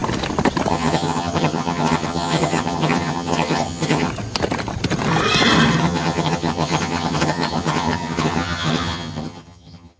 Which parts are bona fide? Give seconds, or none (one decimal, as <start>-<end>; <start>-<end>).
0.0-0.7; 4.1-5.8